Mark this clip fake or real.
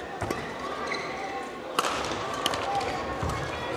real